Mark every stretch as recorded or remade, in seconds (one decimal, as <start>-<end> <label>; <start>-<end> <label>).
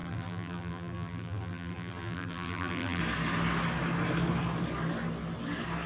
0.0-3.0 remade; 3.0-5.9 recorded